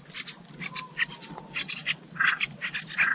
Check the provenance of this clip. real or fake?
real